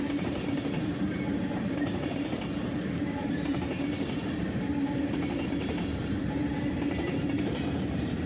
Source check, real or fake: fake